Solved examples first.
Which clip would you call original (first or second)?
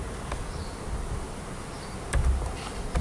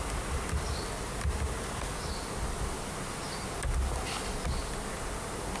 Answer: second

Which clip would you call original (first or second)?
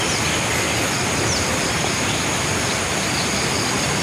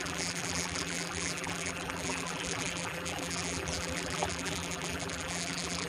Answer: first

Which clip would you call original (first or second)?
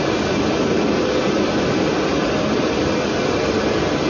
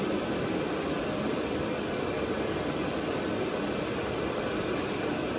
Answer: first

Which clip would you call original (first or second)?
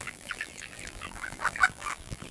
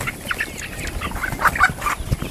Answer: second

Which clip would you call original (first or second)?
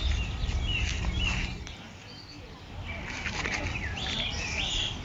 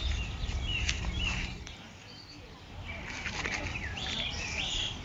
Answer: first